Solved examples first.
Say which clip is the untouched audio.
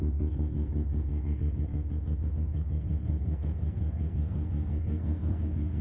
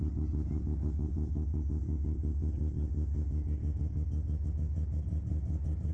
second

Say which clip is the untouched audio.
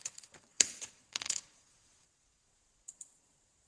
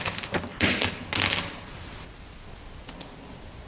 second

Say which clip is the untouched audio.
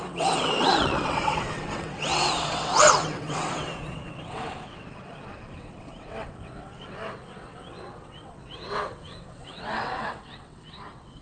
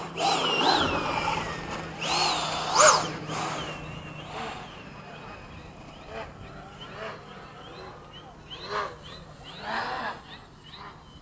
second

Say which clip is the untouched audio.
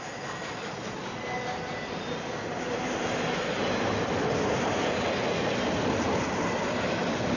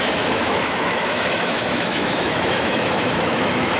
first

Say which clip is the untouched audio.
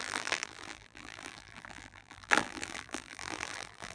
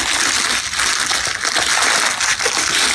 second